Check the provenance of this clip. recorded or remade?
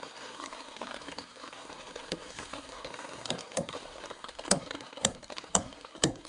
remade